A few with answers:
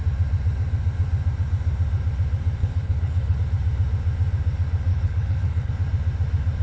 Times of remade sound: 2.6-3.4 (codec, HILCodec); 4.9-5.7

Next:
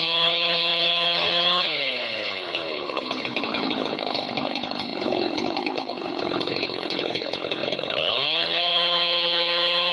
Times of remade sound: 0.0-9.9 (codec, HILCodec)

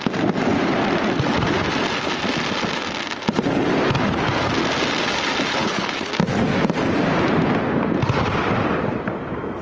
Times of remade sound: 5.5-6.1 (codec, HILCodec)